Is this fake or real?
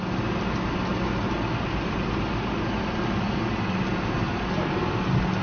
real